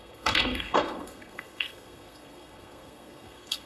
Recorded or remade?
remade